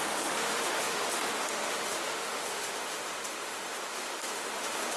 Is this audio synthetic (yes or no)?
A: yes